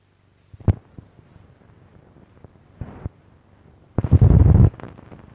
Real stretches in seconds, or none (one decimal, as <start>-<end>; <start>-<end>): 0.0-1.9